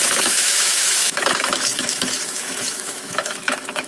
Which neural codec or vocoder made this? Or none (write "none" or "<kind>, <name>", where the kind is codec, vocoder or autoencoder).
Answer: autoencoder, DAC-VAE